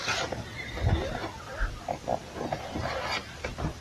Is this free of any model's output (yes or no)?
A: yes